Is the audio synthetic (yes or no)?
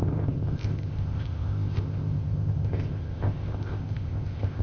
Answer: yes